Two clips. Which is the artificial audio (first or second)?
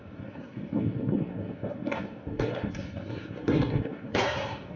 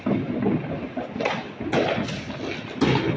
first